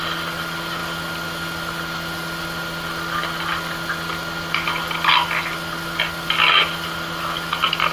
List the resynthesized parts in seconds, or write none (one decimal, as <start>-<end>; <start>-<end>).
none